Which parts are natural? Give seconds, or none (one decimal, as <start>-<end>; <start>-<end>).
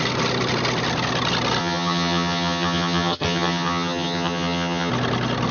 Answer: 0.0-1.6; 4.9-5.5